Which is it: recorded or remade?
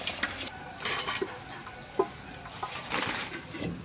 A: recorded